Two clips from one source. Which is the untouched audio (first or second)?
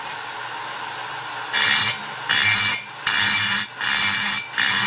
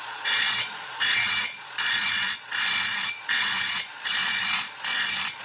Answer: first